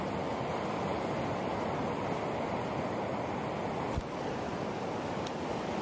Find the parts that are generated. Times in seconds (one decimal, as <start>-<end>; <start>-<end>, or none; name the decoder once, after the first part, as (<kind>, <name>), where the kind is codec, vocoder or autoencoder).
none